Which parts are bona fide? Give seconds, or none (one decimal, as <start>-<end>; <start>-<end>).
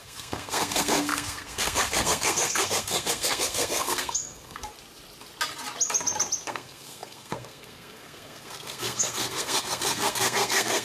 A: 4.7-6.4